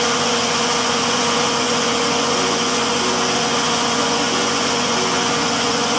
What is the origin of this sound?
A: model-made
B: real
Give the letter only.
A